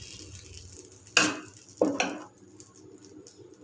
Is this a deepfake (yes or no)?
no